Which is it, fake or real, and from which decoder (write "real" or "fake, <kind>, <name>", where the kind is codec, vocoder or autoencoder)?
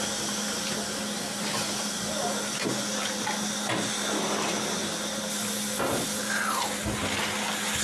real